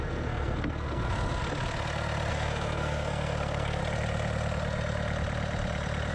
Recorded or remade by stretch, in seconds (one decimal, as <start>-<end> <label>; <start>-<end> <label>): 0.0-1.4 remade; 1.4-2.3 recorded; 2.3-3.8 remade; 3.8-6.1 recorded